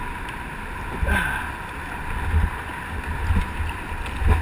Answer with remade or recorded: recorded